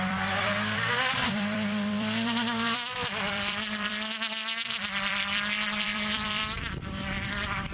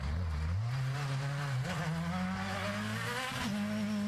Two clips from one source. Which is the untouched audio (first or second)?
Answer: second